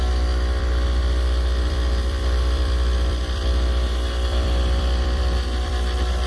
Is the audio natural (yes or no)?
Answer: no